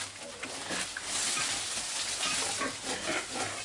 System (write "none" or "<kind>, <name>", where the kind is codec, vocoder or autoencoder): none